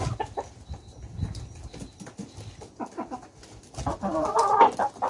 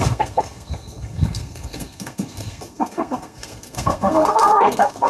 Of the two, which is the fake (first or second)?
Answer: second